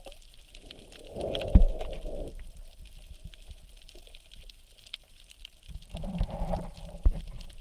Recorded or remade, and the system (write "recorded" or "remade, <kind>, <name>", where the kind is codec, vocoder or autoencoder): remade, vocoder, BigVGAN v2